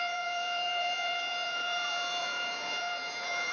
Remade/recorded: remade